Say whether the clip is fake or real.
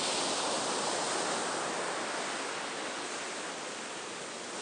real